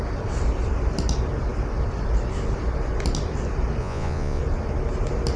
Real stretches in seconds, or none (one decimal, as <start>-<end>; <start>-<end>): 0.0-3.8; 4.4-5.4